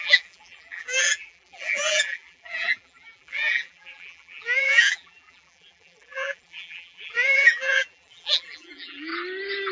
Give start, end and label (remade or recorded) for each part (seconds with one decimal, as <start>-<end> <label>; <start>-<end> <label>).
0.0-9.1 remade; 9.1-9.7 recorded